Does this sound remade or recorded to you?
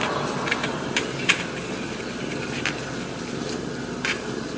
recorded